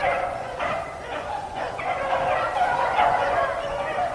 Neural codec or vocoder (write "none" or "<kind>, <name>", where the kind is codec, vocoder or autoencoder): vocoder, Vocos